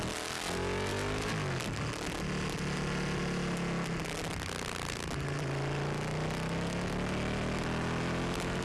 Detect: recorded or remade recorded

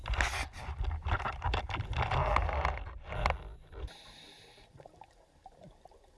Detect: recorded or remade recorded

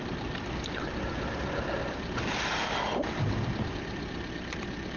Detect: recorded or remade recorded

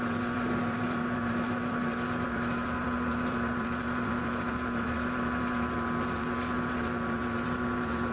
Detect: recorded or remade remade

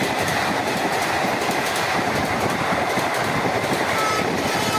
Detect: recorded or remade recorded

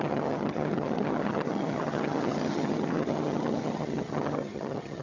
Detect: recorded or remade remade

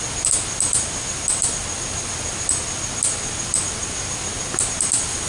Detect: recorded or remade recorded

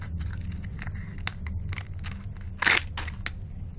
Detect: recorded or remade recorded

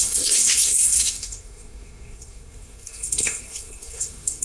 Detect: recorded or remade remade